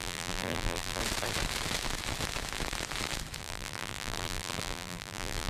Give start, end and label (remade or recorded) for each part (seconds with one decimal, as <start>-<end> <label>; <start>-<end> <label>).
0.0-1.0 remade; 1.0-3.4 recorded; 3.4-5.5 remade